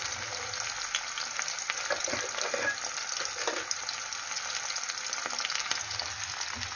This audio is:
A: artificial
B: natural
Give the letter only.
B